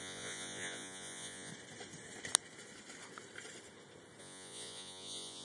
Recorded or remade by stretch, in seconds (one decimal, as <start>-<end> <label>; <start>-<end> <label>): 0.0-1.5 remade; 1.5-4.2 recorded; 4.2-5.4 remade